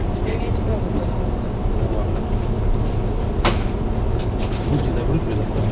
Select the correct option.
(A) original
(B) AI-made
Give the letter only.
A